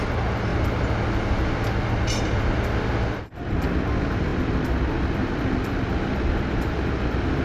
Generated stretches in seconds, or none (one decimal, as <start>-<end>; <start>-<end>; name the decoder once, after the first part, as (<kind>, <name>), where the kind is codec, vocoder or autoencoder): none